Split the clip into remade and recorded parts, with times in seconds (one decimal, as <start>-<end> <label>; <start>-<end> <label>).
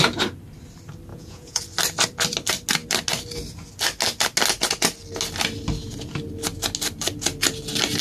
0.0-1.1 recorded; 1.1-1.6 remade; 1.6-8.0 recorded